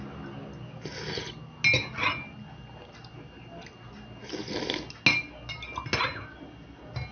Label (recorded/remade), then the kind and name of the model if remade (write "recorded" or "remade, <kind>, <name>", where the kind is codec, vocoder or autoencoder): recorded